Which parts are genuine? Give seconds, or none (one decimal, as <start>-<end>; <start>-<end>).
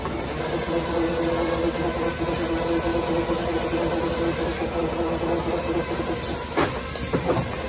0.0-7.7